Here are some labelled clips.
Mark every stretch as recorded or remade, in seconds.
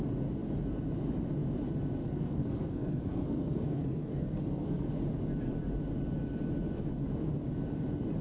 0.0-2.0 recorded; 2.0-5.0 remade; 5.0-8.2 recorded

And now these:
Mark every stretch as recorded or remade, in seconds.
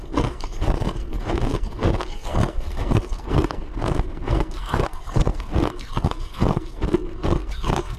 0.0-8.0 remade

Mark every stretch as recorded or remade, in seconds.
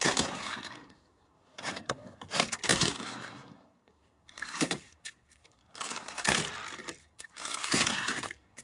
0.0-6.4 remade; 6.4-7.0 recorded; 7.0-8.6 remade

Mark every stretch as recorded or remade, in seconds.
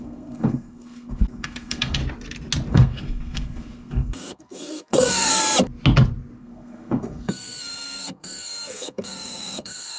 0.0-2.0 remade; 2.0-2.7 recorded; 2.7-5.4 remade; 5.4-6.4 recorded; 6.4-10.0 remade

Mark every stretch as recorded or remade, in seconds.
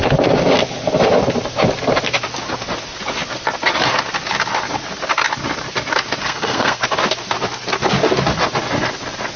0.0-6.2 recorded; 6.2-6.8 remade; 6.8-9.4 recorded